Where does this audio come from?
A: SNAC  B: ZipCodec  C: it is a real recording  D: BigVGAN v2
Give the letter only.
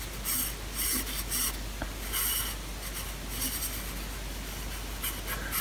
C